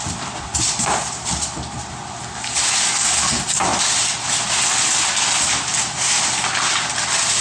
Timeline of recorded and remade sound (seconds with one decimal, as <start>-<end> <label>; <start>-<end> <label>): 0.0-7.4 recorded